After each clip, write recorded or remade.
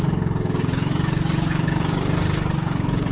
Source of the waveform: remade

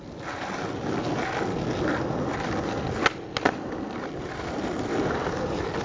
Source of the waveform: recorded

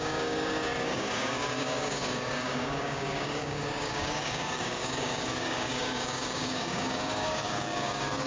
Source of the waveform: remade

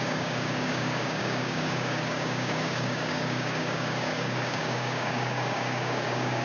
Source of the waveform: remade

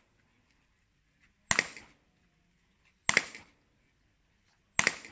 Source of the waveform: recorded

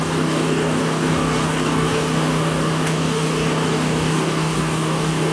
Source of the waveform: remade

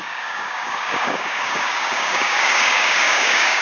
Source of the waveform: remade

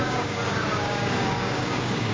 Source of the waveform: remade